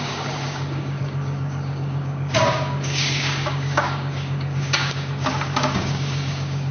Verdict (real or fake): fake